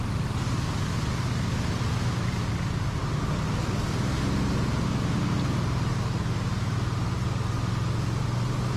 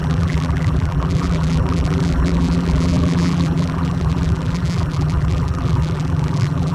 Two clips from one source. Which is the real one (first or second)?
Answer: first